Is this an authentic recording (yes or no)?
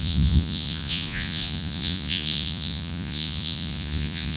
no